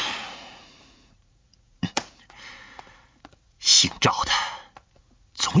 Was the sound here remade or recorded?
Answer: remade